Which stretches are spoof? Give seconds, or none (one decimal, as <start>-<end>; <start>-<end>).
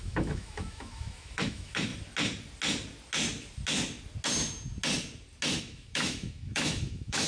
0.0-1.9; 5.6-7.3